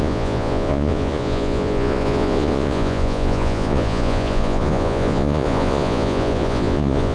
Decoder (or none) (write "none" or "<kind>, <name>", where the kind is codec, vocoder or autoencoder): vocoder, Vocos